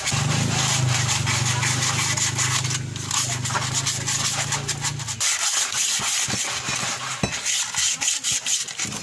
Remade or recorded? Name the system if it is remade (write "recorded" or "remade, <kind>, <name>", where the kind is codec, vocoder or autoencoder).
recorded